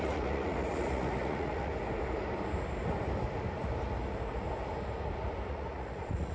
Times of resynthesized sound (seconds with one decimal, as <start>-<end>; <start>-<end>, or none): 0.0-1.7; 5.5-6.3